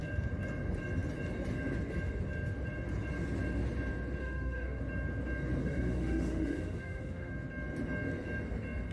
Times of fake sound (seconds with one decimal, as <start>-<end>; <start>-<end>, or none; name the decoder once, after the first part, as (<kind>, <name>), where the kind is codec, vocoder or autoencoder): 4.2-4.8 (autoencoder, DAC-VAE); 5.6-7.3